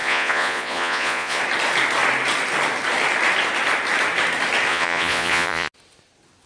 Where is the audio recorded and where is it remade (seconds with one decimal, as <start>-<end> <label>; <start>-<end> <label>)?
0.0-1.4 remade; 1.4-4.7 recorded; 4.7-5.7 remade; 5.7-6.5 recorded